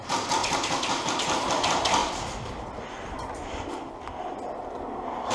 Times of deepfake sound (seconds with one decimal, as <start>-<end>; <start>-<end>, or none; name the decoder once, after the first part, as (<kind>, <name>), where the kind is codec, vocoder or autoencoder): none